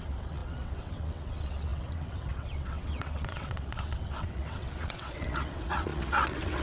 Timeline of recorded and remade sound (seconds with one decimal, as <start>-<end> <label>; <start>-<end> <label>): 0.0-6.6 remade